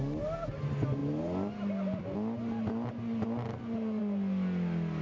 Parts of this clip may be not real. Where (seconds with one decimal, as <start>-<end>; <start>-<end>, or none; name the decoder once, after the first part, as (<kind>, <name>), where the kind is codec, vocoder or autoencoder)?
none

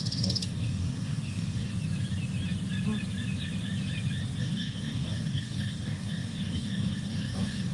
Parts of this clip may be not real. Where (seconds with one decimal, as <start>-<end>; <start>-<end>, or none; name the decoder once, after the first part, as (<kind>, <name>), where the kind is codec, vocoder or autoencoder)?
0.0-1.7 (codec, DAC); 4.4-7.7